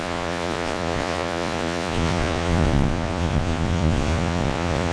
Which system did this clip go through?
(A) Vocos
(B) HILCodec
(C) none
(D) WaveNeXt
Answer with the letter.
A